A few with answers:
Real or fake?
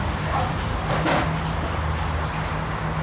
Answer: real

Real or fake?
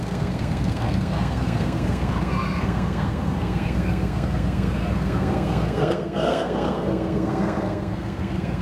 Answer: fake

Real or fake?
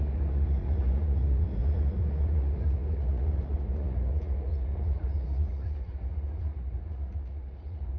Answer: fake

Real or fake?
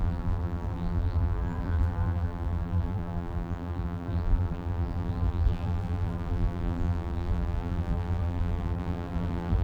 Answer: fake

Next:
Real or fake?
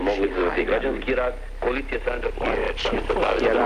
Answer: fake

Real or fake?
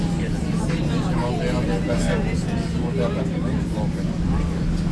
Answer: real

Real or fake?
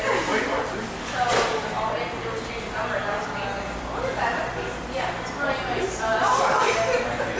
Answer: real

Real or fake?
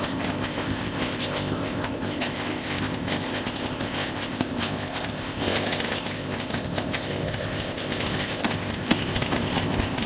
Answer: fake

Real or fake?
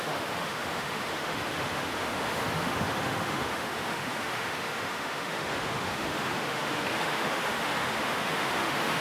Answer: fake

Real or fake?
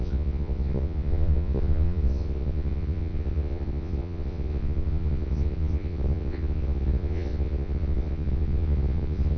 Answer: fake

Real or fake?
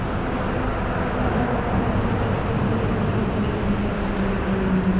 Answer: real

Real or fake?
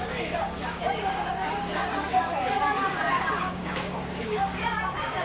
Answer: fake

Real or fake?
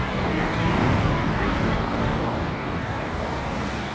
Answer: fake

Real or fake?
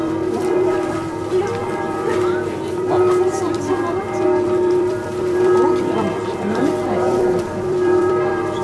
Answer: fake